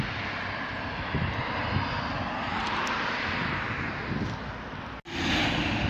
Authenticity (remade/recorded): recorded